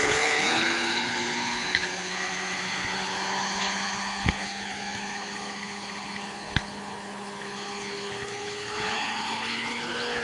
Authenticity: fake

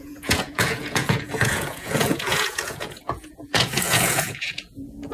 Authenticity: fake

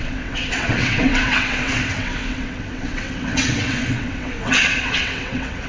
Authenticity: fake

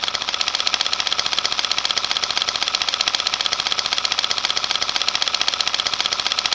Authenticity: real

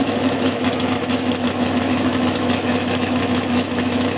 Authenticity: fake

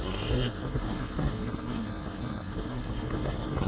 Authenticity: fake